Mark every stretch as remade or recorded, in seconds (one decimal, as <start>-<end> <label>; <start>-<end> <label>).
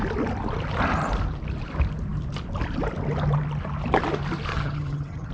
0.0-4.5 recorded; 4.5-5.3 remade